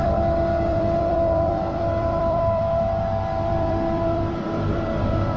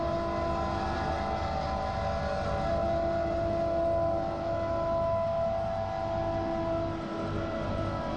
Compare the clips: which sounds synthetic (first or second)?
first